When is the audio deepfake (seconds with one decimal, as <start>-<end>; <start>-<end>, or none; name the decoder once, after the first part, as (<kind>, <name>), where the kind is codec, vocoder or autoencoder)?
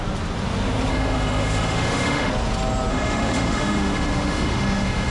0.9-2.3 (autoencoder, DAC-VAE); 2.9-5.1